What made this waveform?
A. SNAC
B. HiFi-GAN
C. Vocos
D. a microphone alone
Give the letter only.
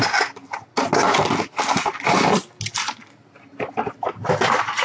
D